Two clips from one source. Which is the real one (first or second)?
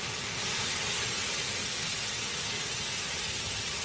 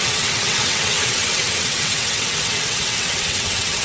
first